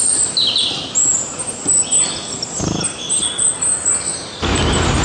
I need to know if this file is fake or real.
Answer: real